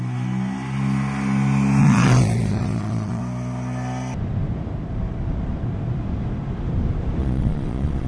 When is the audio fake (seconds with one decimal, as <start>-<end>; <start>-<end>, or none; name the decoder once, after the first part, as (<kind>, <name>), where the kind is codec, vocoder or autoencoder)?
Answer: 1.8-3.2 (vocoder, Vocos); 7.2-8.1